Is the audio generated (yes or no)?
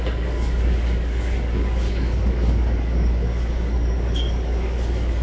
yes